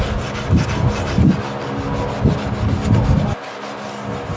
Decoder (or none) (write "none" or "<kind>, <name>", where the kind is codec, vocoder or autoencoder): none